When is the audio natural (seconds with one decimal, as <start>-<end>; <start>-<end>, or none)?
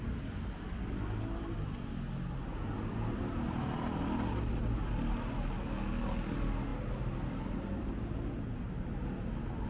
0.0-9.7